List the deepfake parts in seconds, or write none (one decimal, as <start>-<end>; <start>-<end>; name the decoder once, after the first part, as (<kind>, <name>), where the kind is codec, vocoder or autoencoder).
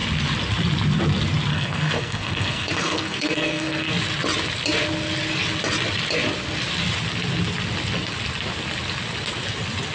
1.5-3.9 (codec, SNAC)